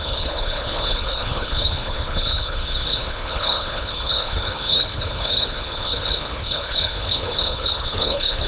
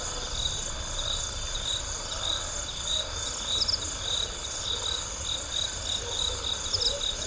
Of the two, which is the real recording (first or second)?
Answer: second